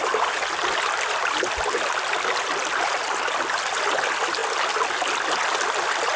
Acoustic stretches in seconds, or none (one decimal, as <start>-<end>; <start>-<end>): 0.0-6.2